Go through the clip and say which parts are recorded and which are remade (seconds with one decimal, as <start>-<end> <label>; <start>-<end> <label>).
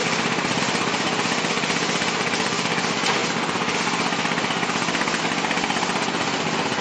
0.0-0.6 remade; 0.6-6.8 recorded